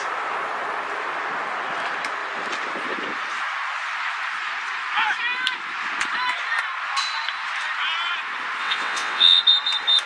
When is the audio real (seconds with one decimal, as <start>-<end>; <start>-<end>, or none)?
0.0-8.6; 9.4-10.1